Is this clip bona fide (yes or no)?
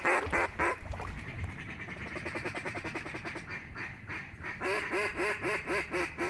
yes